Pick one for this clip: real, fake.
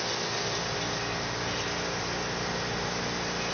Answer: real